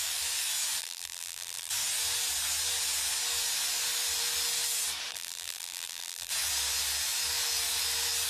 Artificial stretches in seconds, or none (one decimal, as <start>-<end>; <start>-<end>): 0.8-1.7; 5.1-6.3